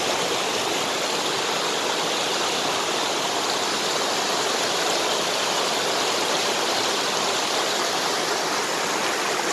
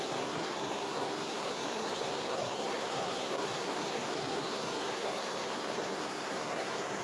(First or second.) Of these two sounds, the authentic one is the first